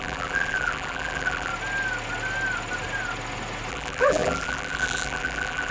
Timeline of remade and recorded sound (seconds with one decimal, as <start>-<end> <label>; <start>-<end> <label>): 0.0-1.5 remade; 1.5-3.7 recorded; 3.7-5.7 remade